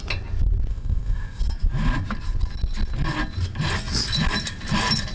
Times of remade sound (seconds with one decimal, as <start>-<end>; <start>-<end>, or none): 0.7-1.4